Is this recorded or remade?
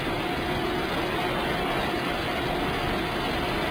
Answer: recorded